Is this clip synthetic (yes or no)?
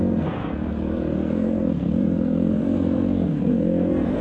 yes